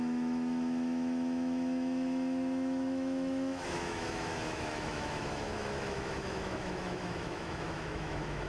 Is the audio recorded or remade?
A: remade